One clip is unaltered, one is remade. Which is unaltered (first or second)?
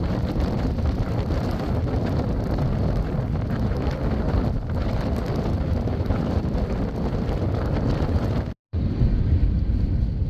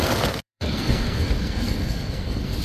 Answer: first